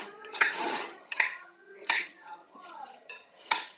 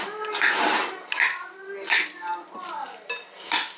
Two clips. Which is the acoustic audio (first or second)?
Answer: second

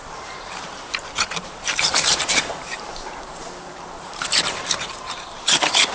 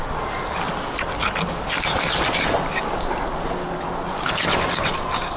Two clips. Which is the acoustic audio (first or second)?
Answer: second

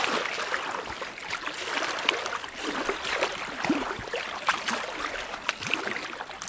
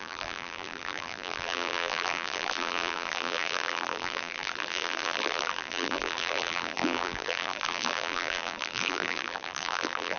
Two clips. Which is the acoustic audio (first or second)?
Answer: first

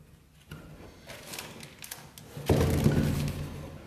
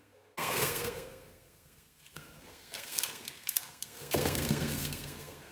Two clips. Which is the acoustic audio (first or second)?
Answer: first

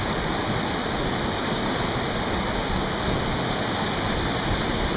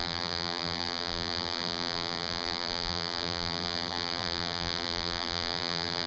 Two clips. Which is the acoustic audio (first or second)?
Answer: first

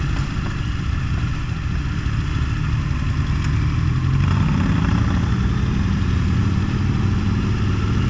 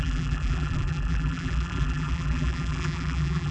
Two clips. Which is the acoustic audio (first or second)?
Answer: first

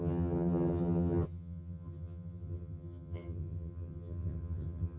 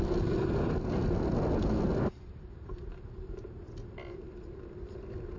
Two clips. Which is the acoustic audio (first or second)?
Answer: second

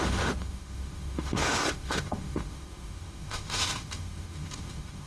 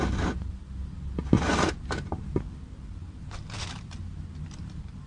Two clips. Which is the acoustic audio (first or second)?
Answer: second